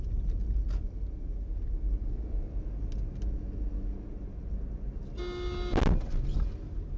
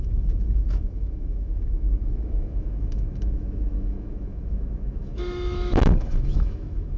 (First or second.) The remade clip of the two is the second